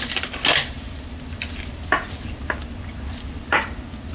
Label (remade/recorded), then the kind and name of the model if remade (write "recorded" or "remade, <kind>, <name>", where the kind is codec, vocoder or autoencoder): recorded